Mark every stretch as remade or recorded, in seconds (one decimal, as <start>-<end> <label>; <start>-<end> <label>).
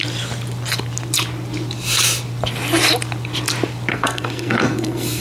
0.0-3.9 recorded; 3.9-5.2 remade